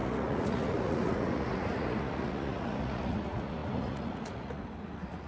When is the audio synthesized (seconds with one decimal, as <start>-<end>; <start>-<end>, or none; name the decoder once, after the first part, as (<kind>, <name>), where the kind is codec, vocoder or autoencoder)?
0.0-5.3 (vocoder, Vocos)